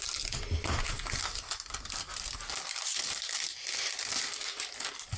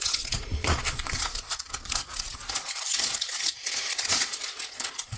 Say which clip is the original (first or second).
first